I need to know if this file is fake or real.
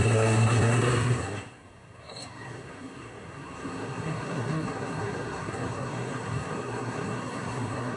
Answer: fake